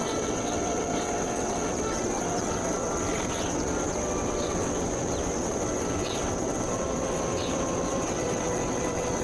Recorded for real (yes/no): no